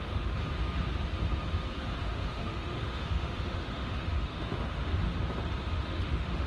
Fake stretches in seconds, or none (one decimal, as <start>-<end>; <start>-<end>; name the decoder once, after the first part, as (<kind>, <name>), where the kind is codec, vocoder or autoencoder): 0.0-0.4 (autoencoder, DAC-VAE); 2.0-4.9; 5.7-6.5